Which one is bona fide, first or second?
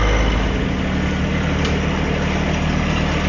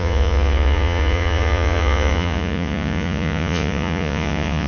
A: first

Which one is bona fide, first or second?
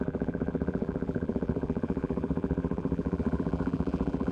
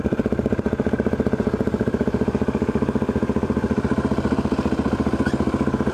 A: second